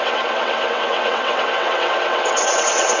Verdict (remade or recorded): remade